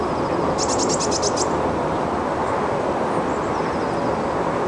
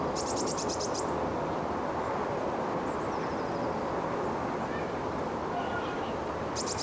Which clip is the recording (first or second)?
first